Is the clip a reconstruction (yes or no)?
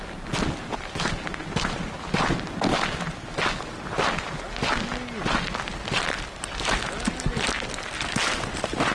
no